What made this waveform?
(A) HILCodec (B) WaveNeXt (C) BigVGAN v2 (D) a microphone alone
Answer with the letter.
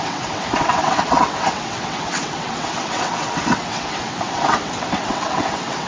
B